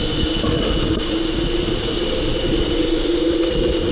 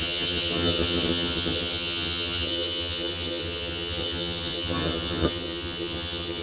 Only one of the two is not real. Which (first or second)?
second